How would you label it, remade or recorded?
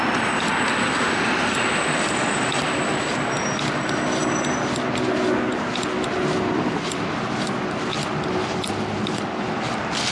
recorded